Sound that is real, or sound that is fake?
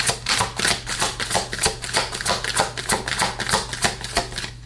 real